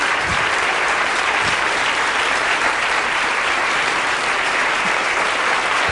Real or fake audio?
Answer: fake